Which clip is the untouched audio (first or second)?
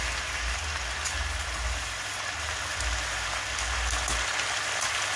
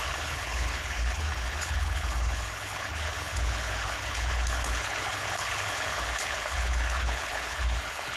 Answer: first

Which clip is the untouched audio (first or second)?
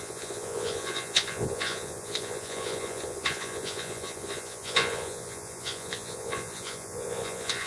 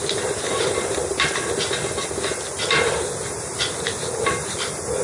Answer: second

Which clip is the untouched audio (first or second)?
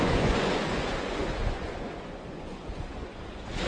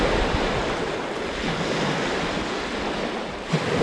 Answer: second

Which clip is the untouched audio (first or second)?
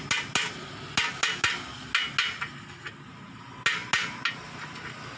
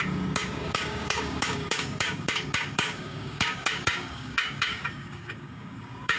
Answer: first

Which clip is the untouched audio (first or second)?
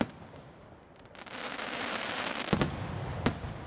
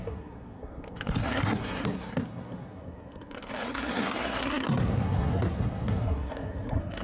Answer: first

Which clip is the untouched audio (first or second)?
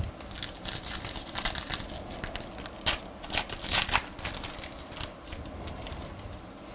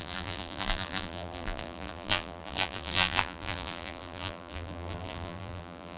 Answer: first